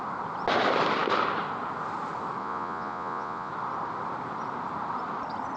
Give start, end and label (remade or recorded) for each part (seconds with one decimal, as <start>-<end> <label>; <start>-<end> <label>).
0.0-2.4 recorded; 2.4-3.5 remade; 3.5-5.6 recorded